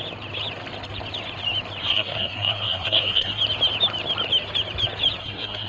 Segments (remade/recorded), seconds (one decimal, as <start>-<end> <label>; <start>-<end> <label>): 0.0-1.8 recorded; 1.8-3.4 remade; 3.4-5.2 recorded; 5.2-5.7 remade